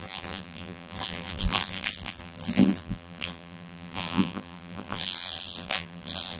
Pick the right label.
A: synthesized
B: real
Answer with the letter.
A